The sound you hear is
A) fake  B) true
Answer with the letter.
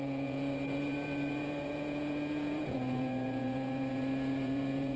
A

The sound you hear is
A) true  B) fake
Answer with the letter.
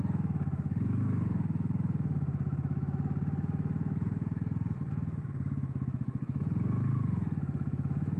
B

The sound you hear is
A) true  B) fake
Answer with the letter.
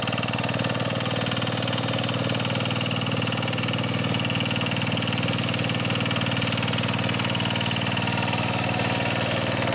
A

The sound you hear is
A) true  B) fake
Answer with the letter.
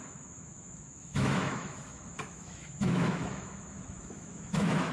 B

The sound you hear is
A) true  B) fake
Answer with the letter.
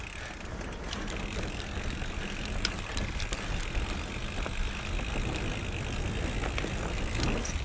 A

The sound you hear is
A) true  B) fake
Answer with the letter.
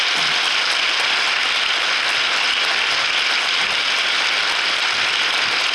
A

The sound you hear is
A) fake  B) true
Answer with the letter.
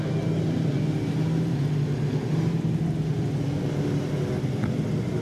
B